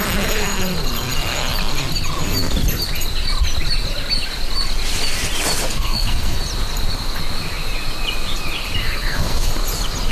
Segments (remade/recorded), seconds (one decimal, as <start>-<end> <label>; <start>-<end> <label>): 0.0-5.7 recorded; 5.7-6.4 remade; 6.4-8.8 recorded; 8.8-9.5 remade; 9.5-10.1 recorded